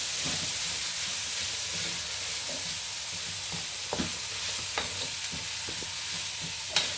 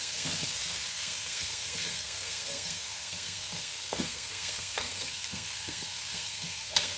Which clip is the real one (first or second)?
first